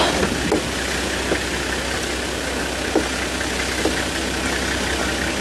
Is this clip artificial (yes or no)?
no